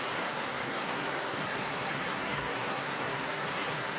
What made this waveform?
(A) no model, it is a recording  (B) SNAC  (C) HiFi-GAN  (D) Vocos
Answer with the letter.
B